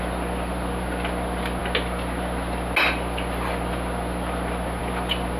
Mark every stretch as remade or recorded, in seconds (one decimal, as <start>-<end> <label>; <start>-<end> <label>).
0.0-5.4 recorded